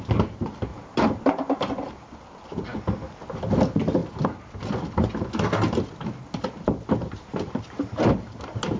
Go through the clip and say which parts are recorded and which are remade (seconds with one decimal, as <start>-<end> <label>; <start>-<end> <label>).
0.0-0.7 recorded; 0.7-1.9 remade; 1.9-7.0 recorded; 7.0-8.0 remade; 8.0-8.8 recorded